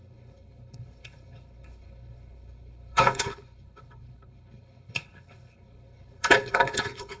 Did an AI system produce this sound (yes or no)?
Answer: yes